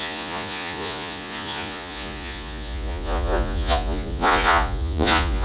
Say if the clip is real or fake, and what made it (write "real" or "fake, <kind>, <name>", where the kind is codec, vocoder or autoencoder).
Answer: fake, vocoder, Vocos